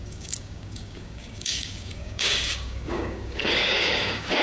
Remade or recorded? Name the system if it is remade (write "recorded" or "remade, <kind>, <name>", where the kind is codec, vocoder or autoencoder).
remade, codec, DAC